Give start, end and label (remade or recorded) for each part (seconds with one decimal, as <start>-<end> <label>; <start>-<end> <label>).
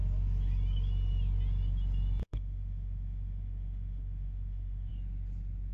0.0-2.2 recorded; 2.2-4.9 remade; 4.9-5.7 recorded